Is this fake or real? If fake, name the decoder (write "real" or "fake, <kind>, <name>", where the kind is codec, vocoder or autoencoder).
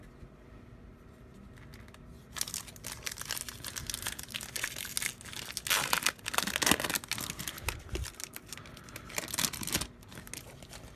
real